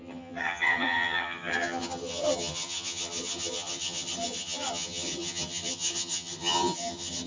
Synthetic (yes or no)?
yes